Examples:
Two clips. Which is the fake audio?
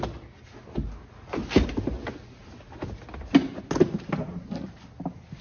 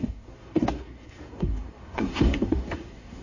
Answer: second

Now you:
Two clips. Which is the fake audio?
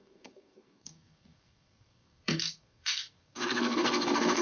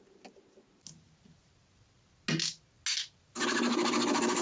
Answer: first